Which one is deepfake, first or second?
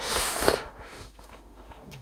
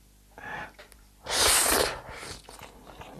first